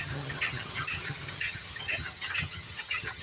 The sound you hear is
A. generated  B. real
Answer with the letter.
A